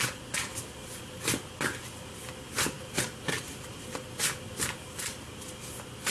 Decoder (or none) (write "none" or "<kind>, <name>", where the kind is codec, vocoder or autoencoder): none